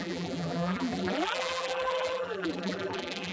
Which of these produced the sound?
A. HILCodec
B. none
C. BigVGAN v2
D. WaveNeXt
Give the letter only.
C